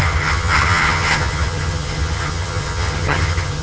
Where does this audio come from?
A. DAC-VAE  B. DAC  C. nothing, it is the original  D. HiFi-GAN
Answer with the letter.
D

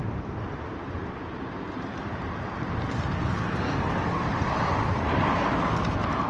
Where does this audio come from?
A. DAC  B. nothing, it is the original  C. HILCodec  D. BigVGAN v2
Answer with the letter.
D